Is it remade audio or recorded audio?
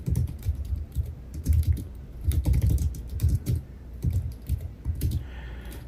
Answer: remade